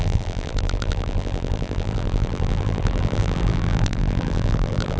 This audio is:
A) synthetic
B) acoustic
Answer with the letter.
A